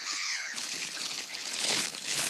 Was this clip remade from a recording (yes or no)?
yes